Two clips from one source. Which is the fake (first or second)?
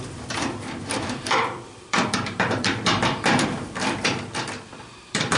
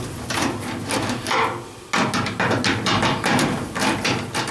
first